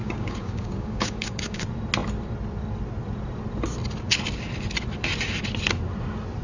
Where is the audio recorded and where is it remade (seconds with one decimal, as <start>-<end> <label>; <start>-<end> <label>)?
0.0-1.6 remade; 1.6-6.4 recorded